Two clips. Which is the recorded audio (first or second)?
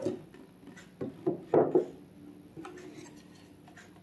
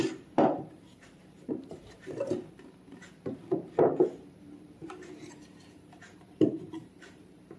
first